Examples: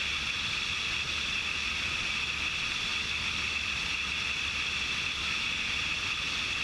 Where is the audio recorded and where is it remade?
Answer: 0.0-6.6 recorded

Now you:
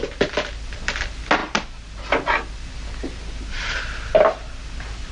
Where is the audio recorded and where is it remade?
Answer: 0.0-5.1 recorded

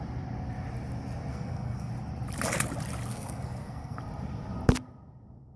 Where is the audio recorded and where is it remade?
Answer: 0.0-1.3 recorded; 1.3-1.9 remade; 1.9-3.1 recorded; 3.1-4.0 remade; 4.0-5.6 recorded